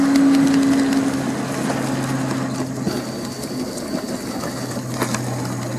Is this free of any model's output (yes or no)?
yes